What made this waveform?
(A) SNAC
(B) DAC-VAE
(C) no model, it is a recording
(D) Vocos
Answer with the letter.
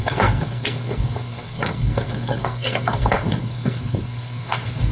A